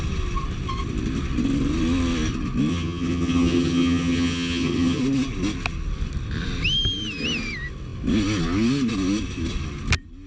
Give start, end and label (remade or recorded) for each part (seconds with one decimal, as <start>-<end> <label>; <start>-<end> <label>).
0.0-2.7 recorded; 2.7-5.0 remade; 5.0-10.3 recorded